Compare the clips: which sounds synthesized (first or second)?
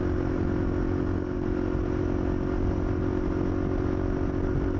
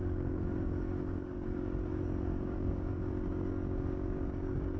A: second